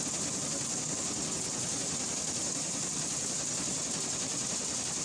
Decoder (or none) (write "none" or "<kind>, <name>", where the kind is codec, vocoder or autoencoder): none